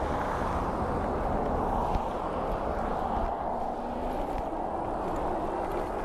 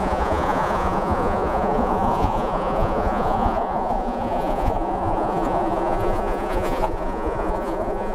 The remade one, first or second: second